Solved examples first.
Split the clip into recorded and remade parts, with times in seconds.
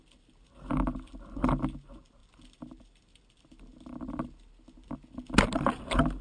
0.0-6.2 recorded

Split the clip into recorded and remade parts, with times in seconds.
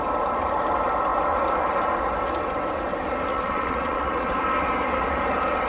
0.0-3.3 recorded; 3.3-4.3 remade; 4.3-5.7 recorded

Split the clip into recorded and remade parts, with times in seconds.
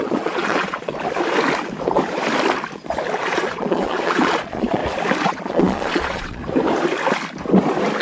0.0-0.9 remade; 0.9-3.2 recorded; 3.2-4.8 remade; 4.8-5.3 recorded; 5.3-6.4 remade; 6.4-8.0 recorded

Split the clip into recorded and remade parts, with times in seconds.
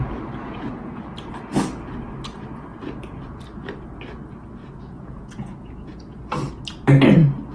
0.0-0.4 recorded; 0.4-1.0 remade; 1.0-2.7 recorded; 2.7-3.2 remade; 3.2-4.6 recorded; 4.6-6.0 remade; 6.0-7.5 recorded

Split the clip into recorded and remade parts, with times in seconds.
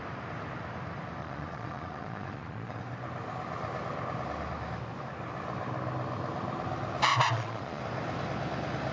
0.0-1.2 recorded; 1.2-2.8 remade; 2.8-7.1 recorded; 7.1-7.8 remade; 7.8-8.9 recorded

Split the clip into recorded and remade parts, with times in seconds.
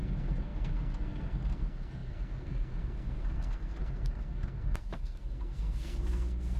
0.0-6.6 remade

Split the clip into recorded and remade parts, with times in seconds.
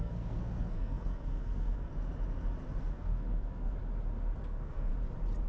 0.0-1.9 remade; 1.9-2.8 recorded; 2.8-3.8 remade; 3.8-4.4 recorded; 4.4-4.9 remade; 4.9-5.5 recorded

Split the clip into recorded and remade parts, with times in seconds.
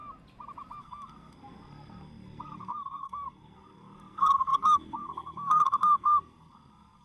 0.0-0.8 recorded; 0.8-7.0 remade